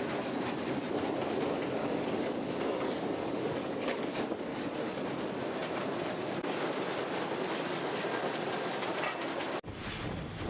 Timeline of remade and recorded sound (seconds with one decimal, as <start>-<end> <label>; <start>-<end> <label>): 0.0-1.8 recorded; 1.8-5.0 remade; 5.0-10.5 recorded